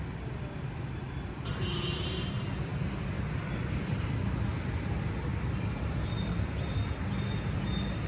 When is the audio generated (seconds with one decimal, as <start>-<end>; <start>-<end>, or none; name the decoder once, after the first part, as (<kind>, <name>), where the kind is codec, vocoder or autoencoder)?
none